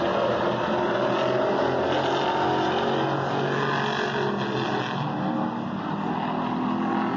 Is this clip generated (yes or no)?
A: no